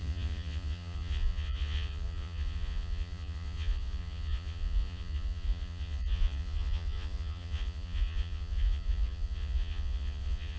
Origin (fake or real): fake